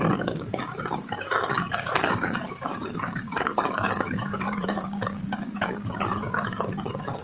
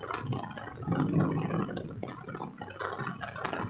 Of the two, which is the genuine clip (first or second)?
second